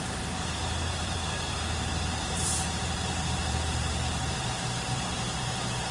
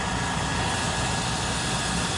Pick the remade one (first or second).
first